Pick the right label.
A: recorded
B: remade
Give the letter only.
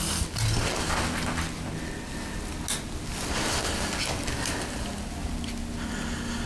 A